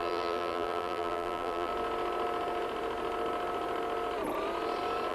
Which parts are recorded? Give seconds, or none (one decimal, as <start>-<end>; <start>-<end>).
1.7-5.1